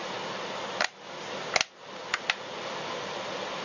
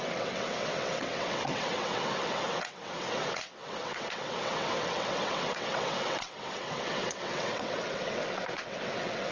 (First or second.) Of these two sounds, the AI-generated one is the second